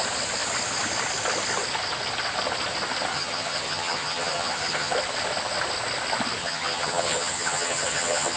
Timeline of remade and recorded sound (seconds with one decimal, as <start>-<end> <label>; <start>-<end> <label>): 0.0-3.1 recorded; 3.1-4.9 remade; 4.9-6.4 recorded; 6.4-8.4 remade